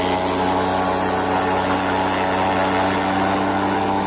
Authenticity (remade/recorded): recorded